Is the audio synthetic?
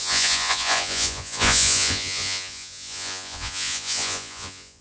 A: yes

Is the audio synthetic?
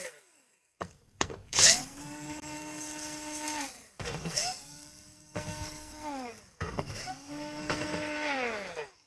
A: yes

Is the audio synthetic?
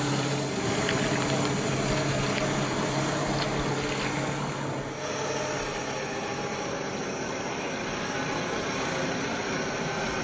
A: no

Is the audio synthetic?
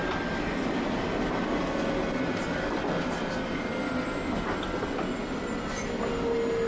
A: no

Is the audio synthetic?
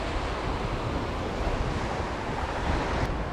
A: no